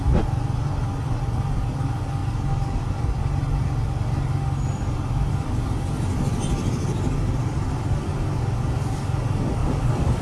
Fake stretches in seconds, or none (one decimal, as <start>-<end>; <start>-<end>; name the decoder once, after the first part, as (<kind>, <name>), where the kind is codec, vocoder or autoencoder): 9.6-10.2 (vocoder, BigVGAN v2)